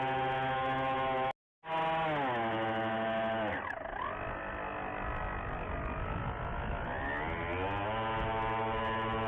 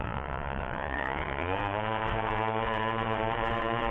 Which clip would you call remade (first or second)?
second